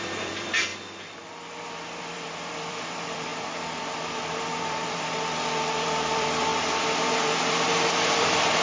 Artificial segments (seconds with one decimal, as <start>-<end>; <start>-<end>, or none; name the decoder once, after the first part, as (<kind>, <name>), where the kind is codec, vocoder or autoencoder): 0.0-3.3 (vocoder, BigVGAN v2); 4.0-8.6